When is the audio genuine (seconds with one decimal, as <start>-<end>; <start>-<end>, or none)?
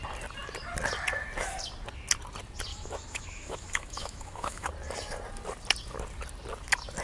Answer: 0.0-2.7; 4.7-7.0